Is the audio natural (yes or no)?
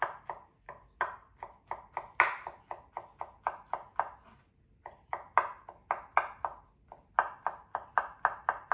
yes